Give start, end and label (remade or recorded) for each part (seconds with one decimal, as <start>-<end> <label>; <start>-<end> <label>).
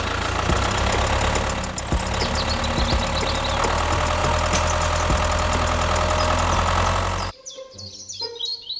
0.0-8.8 recorded